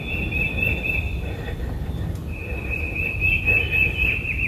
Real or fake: real